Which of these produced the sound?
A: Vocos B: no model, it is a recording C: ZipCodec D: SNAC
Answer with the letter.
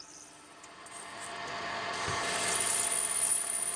B